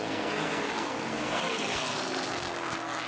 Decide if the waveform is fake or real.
fake